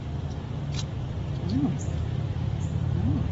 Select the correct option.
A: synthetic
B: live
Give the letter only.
A